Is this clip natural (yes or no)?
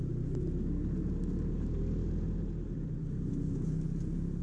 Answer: yes